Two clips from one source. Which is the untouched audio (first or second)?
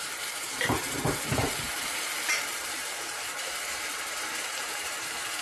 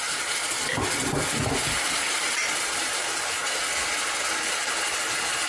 second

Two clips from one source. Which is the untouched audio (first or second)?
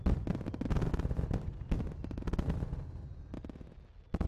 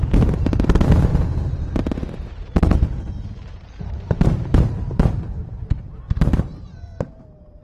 first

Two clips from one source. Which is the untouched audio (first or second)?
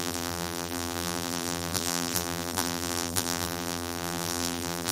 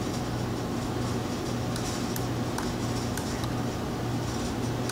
second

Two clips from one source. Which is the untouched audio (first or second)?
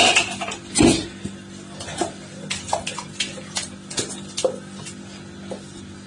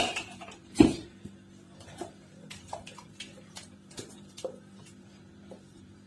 first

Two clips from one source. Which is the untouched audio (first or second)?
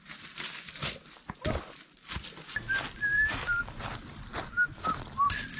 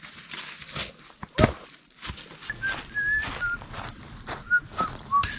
second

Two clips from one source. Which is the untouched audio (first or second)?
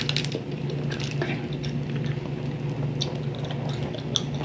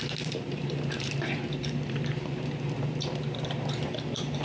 first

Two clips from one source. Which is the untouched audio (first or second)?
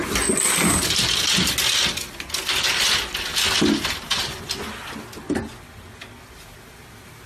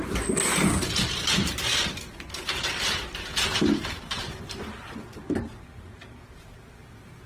first